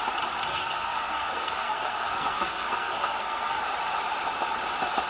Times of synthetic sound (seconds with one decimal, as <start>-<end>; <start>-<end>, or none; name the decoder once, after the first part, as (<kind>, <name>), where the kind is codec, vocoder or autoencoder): 0.5-3.6 (codec, SNAC)